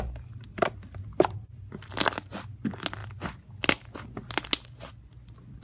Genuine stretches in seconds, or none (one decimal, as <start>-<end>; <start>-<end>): 0.0-5.6